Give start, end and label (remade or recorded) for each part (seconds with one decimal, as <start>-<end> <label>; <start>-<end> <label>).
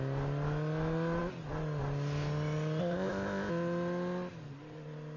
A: 0.0-2.8 recorded; 2.8-3.5 remade; 3.5-5.2 recorded